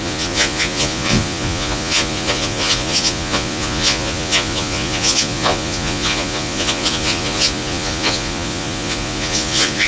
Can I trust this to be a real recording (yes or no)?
no